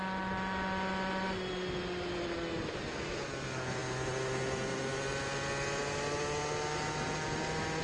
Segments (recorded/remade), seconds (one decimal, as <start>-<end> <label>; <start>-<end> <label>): 0.0-7.8 recorded